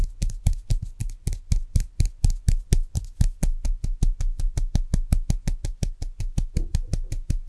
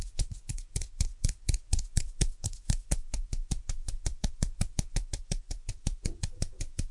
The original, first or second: first